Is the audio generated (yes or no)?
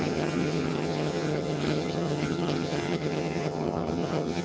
yes